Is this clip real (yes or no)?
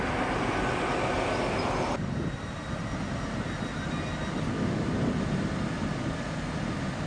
yes